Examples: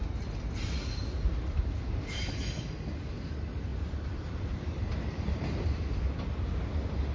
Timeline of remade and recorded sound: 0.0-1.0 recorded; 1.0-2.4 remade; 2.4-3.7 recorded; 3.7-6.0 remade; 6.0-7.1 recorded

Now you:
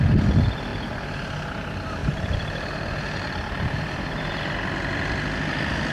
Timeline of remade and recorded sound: 0.0-2.0 recorded; 2.0-4.4 remade; 4.4-5.9 recorded

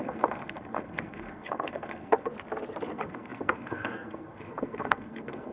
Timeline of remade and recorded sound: 0.0-2.3 remade; 2.3-2.9 recorded; 2.9-5.5 remade